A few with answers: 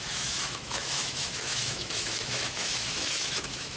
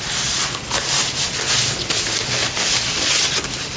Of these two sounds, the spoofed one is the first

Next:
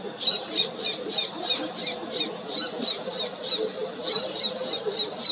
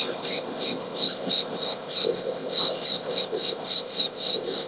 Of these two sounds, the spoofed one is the second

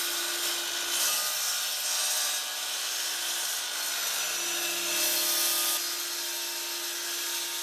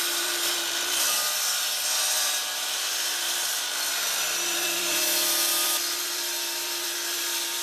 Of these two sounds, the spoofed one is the second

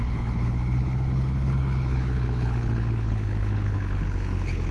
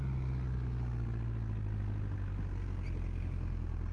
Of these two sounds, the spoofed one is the first